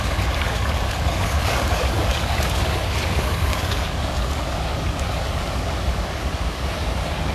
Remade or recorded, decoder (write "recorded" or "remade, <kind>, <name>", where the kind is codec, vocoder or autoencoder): remade, codec, DAC